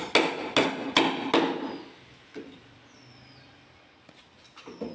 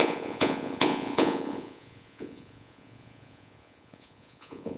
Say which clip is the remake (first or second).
second